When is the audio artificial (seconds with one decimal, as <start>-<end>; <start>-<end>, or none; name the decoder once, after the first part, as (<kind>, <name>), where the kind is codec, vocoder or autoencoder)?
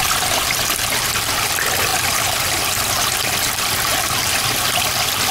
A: none